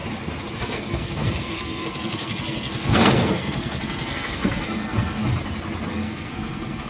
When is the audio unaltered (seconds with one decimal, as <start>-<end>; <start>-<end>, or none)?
0.0-0.6; 5.3-5.9